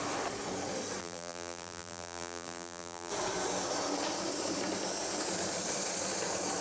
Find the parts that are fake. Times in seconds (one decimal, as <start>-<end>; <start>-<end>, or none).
1.0-3.1